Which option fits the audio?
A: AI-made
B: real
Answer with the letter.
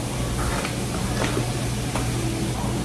B